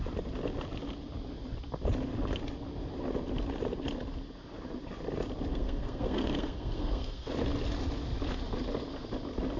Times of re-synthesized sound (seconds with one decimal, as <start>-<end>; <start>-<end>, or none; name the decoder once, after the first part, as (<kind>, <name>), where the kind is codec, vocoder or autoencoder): 5.5-7.3 (codec, SNAC)